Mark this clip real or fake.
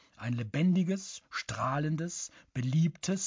real